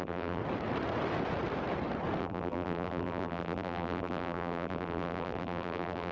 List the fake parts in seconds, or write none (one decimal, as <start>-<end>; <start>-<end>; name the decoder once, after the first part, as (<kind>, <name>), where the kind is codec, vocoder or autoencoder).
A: 0.0-0.4 (vocoder, BigVGAN v2); 2.2-6.1